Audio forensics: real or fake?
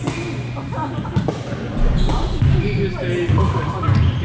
real